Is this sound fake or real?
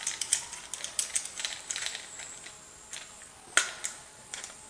real